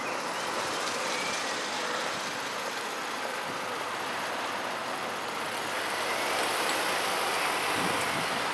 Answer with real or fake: real